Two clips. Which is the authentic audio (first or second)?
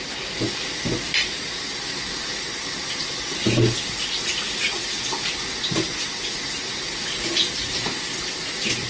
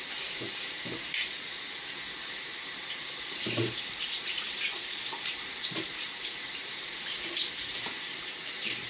first